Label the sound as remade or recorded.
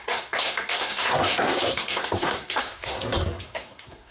remade